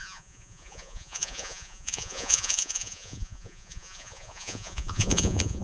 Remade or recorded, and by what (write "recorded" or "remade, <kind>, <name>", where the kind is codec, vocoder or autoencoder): remade, vocoder, Vocos